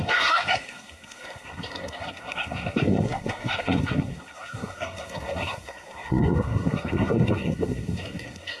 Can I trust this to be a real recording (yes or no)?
no